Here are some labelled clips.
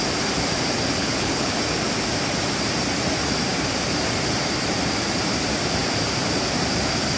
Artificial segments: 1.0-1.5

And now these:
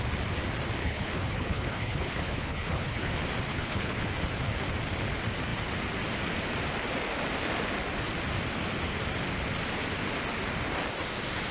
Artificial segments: 0.8-3.1; 3.5-4.1

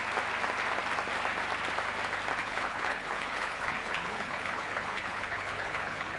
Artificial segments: 2.4-6.2

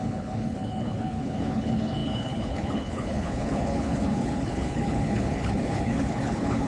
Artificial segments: 0.0-6.7

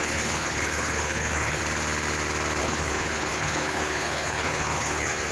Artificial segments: 0.0-1.6; 2.6-5.3

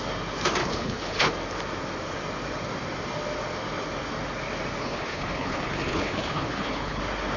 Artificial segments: 0.6-1.3; 4.8-7.0

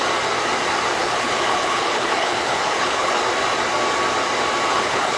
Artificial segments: 1.0-3.2; 4.7-5.2